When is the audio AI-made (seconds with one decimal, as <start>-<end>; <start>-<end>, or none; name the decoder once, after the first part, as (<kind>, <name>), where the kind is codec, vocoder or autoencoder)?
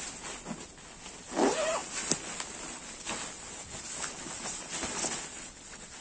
none